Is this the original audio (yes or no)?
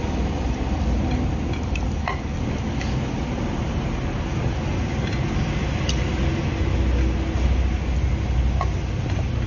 yes